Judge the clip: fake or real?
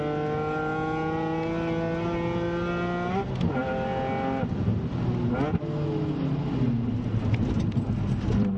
real